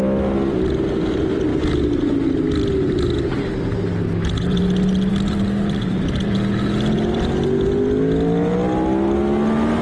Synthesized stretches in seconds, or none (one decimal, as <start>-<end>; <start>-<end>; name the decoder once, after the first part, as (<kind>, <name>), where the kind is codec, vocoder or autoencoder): none